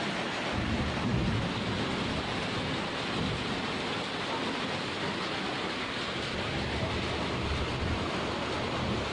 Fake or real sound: real